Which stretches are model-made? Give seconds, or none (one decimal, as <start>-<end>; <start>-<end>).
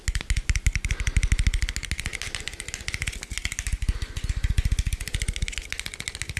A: 2.1-2.7